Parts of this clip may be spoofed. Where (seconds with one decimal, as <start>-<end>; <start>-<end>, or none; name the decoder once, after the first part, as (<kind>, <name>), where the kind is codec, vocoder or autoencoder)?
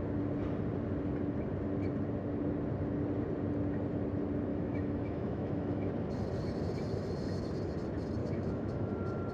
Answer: 4.5-5.9 (autoencoder, DAC-VAE); 8.2-8.9